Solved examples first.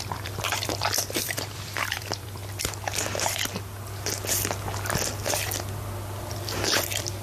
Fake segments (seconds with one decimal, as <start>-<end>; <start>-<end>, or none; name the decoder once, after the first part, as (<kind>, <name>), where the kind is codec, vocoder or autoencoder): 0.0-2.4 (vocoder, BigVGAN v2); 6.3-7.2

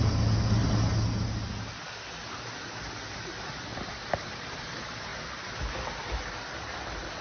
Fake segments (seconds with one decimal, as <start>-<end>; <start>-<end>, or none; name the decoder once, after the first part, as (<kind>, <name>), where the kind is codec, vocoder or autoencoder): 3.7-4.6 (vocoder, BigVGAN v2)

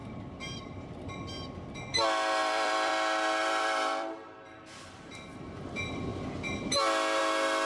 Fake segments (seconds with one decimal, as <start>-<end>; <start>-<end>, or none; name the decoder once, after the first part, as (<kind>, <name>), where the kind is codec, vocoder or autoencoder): 0.0-1.1 (vocoder, BigVGAN v2); 2.4-2.9; 3.4-5.6

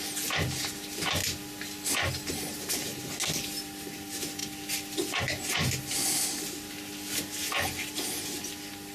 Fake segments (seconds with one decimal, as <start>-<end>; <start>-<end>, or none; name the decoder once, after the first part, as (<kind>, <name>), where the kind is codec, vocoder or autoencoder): none

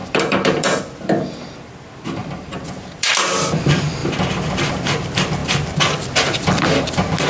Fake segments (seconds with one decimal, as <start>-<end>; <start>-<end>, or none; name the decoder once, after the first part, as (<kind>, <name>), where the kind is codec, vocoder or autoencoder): 0.0-0.8 (vocoder, BigVGAN v2); 2.2-3.1; 5.4-5.9